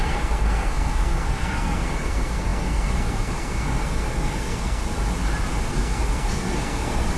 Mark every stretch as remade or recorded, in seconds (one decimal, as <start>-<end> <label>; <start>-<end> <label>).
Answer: 0.0-4.8 remade; 4.8-5.7 recorded; 5.7-7.2 remade